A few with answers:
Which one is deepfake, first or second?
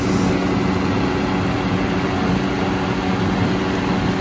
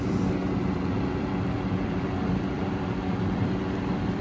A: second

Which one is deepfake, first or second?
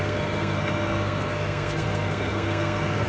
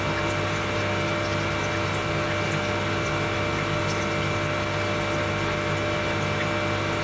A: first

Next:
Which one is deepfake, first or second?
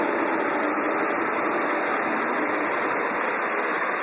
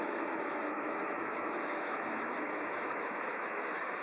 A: second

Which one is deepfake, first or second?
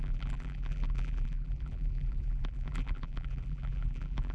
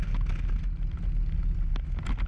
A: first